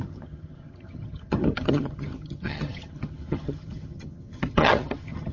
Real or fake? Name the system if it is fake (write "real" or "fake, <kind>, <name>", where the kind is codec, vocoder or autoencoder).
fake, vocoder, HiFi-GAN